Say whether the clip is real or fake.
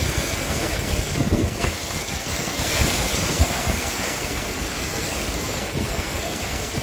fake